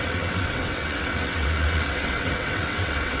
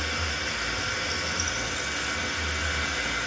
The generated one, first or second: first